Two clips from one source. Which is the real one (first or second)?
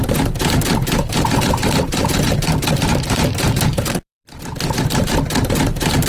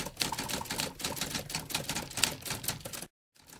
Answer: second